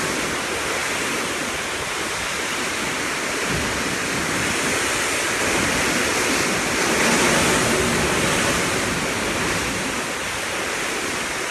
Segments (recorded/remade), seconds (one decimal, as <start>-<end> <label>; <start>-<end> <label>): 0.0-11.5 recorded